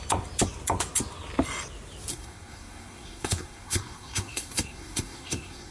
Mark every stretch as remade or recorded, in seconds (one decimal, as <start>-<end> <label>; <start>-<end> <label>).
0.0-2.1 recorded; 2.1-5.7 remade